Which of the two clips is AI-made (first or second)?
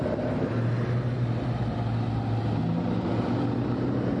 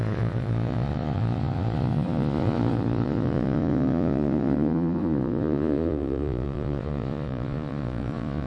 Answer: second